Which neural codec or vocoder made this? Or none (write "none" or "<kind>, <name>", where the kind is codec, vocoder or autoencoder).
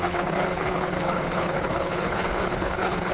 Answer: codec, HILCodec